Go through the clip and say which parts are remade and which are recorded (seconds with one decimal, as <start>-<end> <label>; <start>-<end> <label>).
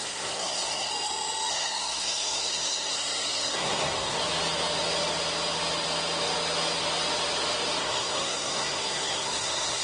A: 0.0-0.9 remade; 0.9-1.5 recorded; 1.5-4.2 remade; 4.2-7.8 recorded; 7.8-9.8 remade